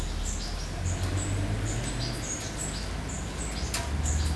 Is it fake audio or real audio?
real